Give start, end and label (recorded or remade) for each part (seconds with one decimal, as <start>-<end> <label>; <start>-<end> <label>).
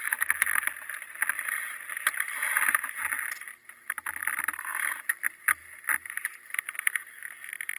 0.0-4.2 recorded; 4.2-4.9 remade; 4.9-5.6 recorded; 5.6-7.3 remade; 7.3-7.8 recorded